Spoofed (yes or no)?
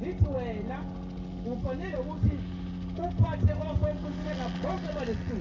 no